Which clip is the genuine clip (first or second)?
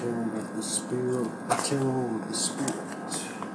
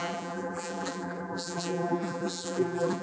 first